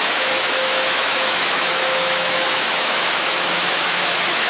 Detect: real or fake fake